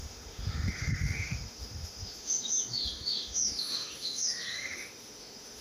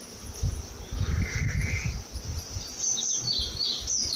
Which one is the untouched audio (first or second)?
second